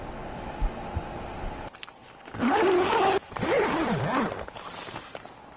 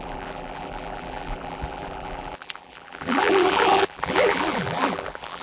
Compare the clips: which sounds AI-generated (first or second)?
second